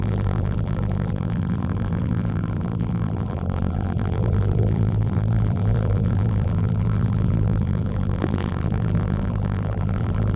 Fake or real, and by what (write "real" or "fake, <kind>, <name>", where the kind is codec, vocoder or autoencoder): fake, vocoder, BigVGAN v2